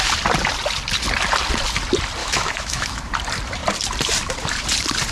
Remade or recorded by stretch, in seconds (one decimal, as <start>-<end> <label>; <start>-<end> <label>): 0.0-2.2 recorded; 2.2-3.1 remade; 3.1-5.1 recorded